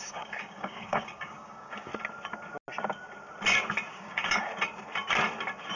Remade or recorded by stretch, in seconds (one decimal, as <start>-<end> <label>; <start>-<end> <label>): 0.0-1.9 remade; 1.9-3.9 recorded; 3.9-4.5 remade; 4.5-5.8 recorded